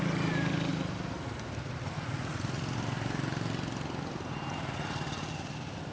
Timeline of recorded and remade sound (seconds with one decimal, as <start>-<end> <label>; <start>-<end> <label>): 0.0-5.9 recorded